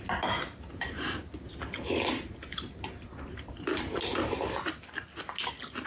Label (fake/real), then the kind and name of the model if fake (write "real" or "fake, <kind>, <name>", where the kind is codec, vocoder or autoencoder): real